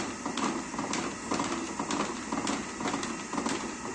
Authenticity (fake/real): real